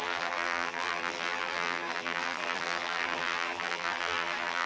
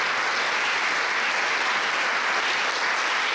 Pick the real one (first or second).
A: second